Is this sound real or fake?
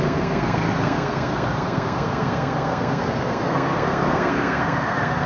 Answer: fake